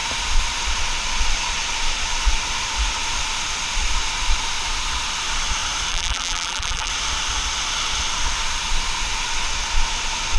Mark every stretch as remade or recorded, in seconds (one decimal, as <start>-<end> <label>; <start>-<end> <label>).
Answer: 0.0-5.9 recorded; 5.9-6.9 remade; 6.9-10.4 recorded